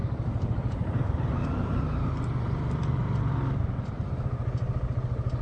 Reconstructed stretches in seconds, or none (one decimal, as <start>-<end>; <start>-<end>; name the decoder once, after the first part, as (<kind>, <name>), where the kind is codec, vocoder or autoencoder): 0.0-3.2 (vocoder, BigVGAN v2)